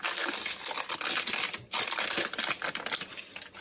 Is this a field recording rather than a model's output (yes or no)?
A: yes